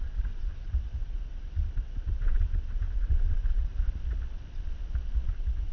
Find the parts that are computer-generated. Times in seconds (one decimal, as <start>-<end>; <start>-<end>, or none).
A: 0.0-3.7; 5.3-5.7